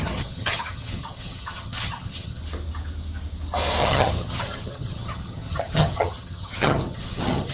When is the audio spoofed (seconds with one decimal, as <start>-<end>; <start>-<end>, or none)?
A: 0.0-2.4; 3.8-7.5